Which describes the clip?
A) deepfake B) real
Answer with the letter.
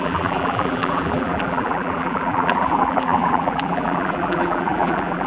A